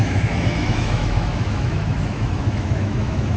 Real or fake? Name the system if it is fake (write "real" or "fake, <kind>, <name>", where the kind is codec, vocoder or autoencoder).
fake, autoencoder, DAC-VAE